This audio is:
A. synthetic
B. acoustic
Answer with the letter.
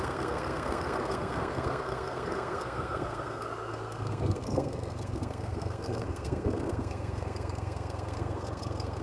A